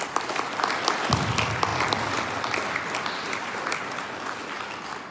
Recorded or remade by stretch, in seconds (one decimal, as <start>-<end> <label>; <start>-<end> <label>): 0.0-5.1 recorded